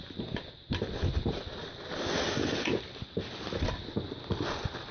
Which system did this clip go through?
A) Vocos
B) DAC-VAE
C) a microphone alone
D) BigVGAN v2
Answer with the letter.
C